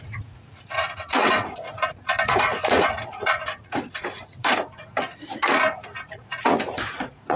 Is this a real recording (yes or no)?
no